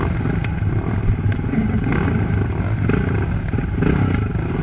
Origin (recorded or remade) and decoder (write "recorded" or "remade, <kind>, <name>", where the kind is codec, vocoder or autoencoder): recorded